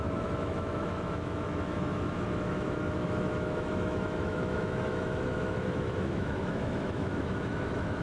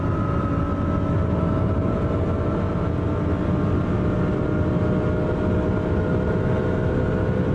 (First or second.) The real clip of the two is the second